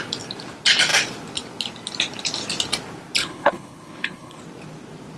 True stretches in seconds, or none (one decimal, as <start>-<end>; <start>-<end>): 0.0-3.2; 4.4-5.2